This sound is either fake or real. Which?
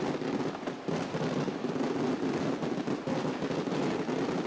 real